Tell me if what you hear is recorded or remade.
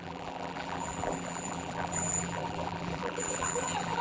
remade